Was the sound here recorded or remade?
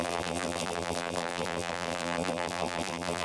remade